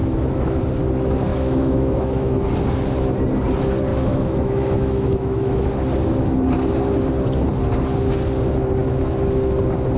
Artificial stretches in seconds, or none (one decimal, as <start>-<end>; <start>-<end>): 0.0-0.6; 1.3-2.5; 3.9-5.7